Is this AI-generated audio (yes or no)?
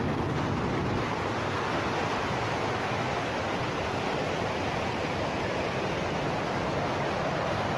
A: no